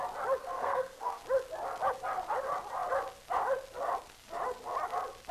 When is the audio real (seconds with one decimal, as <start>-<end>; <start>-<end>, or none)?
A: 0.0-0.4; 1.2-5.3